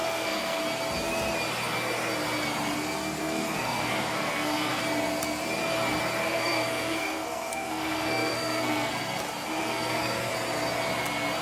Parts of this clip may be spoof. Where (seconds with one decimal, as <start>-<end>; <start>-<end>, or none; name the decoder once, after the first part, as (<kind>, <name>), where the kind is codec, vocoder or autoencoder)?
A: 0.0-0.6 (codec, SNAC); 3.2-4.8; 6.2-9.2; 9.6-10.3